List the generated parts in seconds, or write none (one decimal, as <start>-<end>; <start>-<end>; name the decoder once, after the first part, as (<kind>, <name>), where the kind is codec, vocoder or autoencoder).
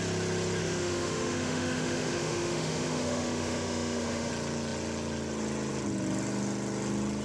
0.6-4.3 (autoencoder, DAC-VAE)